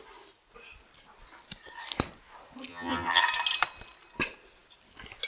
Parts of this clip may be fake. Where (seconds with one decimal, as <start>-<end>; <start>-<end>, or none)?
2.7-3.2